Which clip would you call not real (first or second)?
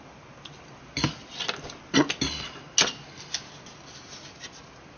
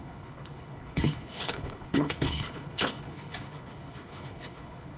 second